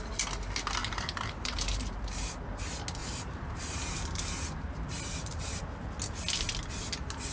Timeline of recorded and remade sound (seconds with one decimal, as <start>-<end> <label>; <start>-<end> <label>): 0.0-0.8 recorded; 0.8-2.6 remade; 2.6-3.0 recorded; 3.0-5.6 remade; 5.6-7.3 recorded